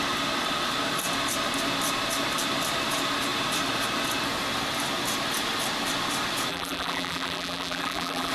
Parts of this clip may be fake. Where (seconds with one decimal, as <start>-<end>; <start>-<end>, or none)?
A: 6.5-8.3